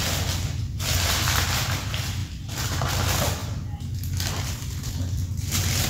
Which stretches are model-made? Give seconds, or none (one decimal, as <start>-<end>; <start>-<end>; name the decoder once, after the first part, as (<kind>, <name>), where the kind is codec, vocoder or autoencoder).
none